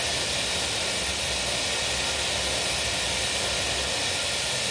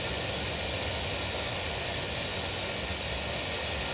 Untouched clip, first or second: first